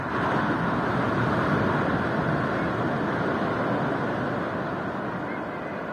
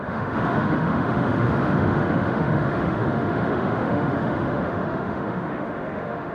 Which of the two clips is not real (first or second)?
second